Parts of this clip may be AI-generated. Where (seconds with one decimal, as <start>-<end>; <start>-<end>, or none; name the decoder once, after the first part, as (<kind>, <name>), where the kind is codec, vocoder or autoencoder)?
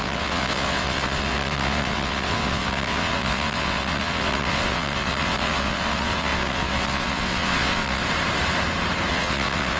0.0-8.0 (vocoder, WaveNeXt); 9.1-9.8